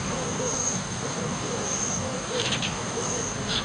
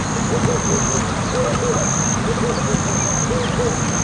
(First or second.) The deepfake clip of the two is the first